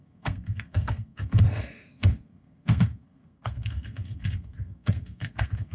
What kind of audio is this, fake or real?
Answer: fake